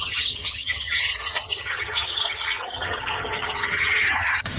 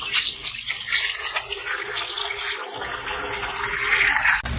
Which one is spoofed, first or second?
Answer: first